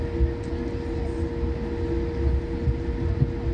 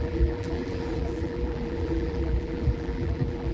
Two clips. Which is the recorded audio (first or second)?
first